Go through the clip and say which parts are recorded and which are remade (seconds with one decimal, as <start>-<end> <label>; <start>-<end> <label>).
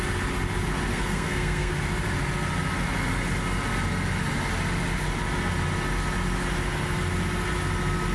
0.0-0.9 recorded; 0.9-1.7 remade; 1.7-8.1 recorded